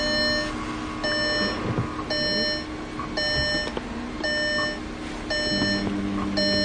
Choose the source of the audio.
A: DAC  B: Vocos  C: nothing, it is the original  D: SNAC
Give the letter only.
C